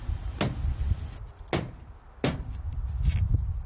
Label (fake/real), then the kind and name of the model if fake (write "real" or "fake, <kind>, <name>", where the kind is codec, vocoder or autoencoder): real